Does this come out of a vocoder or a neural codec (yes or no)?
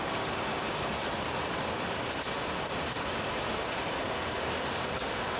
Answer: no